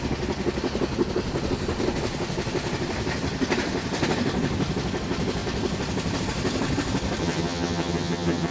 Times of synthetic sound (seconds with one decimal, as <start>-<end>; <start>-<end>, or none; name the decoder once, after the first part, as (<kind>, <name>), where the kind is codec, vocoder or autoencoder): 7.2-8.5 (vocoder, HiFi-GAN)